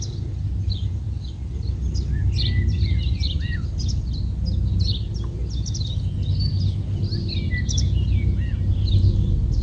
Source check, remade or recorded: recorded